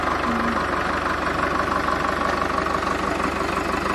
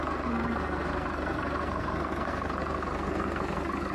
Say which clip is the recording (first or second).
first